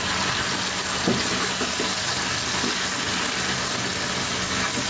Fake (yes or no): no